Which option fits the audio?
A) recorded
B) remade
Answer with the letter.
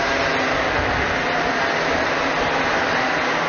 A